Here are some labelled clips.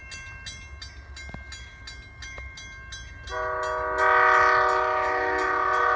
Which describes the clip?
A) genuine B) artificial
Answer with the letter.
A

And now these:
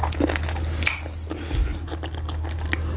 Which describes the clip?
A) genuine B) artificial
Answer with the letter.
A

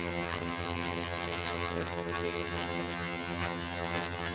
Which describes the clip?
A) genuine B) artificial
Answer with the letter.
B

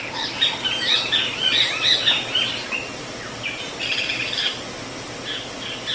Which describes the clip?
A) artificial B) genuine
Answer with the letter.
B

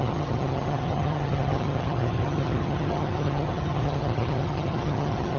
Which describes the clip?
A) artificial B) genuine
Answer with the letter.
A